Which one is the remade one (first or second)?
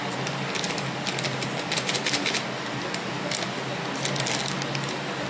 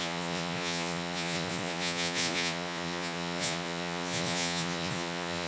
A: second